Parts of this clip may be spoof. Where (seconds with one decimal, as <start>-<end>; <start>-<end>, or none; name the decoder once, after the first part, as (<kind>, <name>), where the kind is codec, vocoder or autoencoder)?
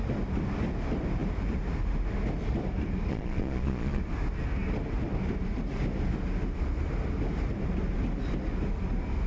3.1-4.0 (vocoder, Vocos)